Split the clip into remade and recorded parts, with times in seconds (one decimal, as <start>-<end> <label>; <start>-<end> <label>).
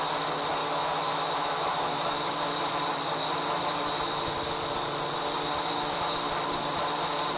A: 0.0-0.6 recorded; 0.6-2.3 remade; 2.3-7.4 recorded